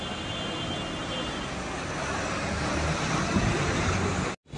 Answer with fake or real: real